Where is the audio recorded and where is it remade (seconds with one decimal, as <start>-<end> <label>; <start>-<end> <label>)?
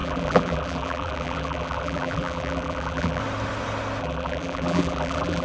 0.0-3.2 remade; 3.2-4.0 recorded; 4.0-5.4 remade